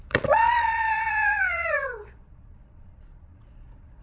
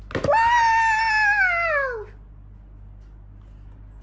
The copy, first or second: first